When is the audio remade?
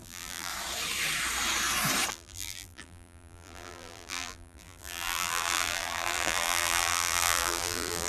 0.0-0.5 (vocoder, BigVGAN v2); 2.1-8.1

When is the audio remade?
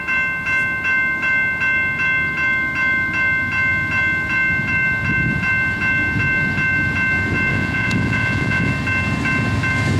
7.5-8.7 (vocoder, Vocos)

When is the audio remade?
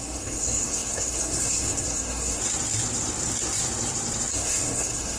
0.0-2.4 (codec, SNAC); 4.3-5.2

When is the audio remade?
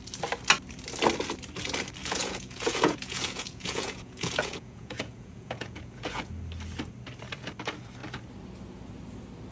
2.0-6.3 (vocoder, Vocos)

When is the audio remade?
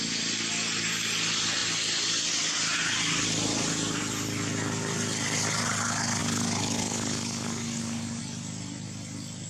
6.2-8.2 (codec, DAC)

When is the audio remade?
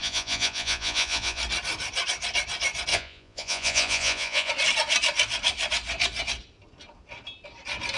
0.0-1.4 (vocoder, Vocos); 2.9-4.5